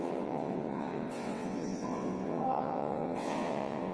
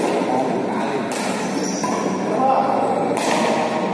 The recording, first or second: second